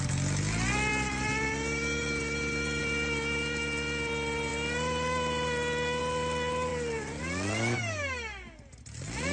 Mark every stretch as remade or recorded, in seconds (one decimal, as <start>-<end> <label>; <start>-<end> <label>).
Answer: 0.0-6.7 recorded; 6.7-7.2 remade; 7.2-9.3 recorded